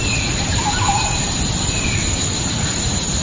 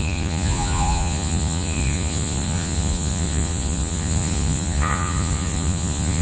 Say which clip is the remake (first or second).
second